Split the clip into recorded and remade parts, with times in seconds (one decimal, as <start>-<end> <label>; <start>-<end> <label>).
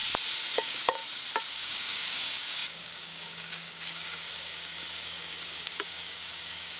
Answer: 0.0-0.5 recorded; 0.5-1.0 remade; 1.0-1.5 recorded; 1.5-6.8 remade